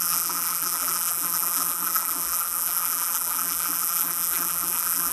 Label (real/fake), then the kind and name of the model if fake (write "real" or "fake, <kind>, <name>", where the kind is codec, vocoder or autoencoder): fake, vocoder, BigVGAN v2